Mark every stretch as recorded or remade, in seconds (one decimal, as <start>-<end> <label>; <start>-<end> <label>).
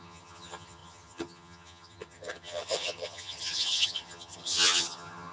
0.0-5.3 remade